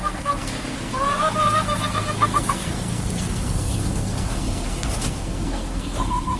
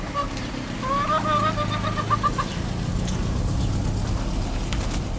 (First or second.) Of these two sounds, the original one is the second